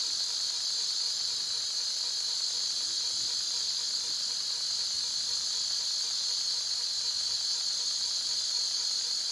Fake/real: real